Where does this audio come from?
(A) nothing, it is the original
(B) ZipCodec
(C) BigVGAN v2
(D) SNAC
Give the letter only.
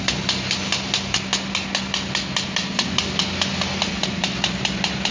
A